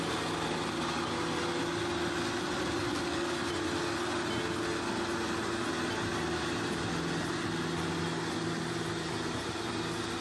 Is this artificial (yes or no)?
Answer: no